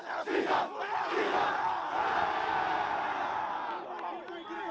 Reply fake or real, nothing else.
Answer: real